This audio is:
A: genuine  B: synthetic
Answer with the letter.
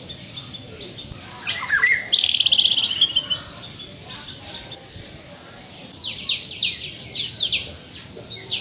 A